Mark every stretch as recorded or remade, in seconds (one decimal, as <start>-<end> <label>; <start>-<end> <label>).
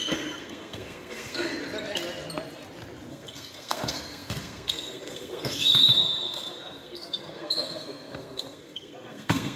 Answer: 0.0-1.5 remade; 1.5-3.1 recorded; 3.1-9.6 remade